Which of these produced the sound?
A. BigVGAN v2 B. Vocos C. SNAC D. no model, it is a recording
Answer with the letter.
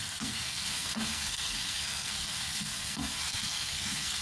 C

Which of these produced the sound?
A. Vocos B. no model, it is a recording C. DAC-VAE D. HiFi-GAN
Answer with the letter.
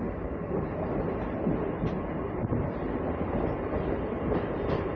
B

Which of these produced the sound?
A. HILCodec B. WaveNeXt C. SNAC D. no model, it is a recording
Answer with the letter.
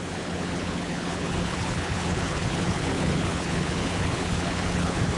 A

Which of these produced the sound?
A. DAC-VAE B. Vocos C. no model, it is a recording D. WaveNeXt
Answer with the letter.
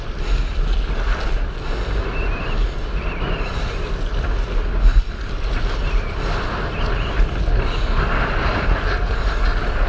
C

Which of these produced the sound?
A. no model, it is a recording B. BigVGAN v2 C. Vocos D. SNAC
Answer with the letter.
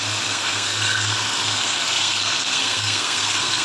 D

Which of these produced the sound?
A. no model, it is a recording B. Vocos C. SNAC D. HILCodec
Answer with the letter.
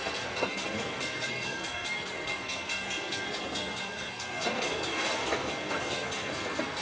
C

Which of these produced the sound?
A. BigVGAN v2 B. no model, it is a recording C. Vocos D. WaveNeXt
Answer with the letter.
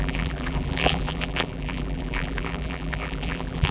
A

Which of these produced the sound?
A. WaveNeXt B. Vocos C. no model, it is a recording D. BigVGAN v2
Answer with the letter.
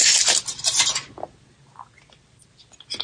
C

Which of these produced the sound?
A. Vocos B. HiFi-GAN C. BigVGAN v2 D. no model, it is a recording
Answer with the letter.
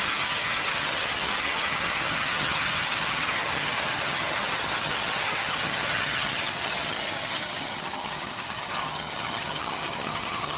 B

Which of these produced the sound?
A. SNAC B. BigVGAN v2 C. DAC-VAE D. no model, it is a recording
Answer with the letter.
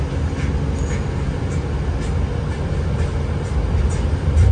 D